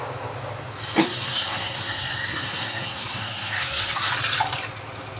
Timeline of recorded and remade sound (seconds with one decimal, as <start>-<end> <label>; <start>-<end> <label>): 0.0-1.0 recorded; 1.0-4.1 remade; 4.1-5.2 recorded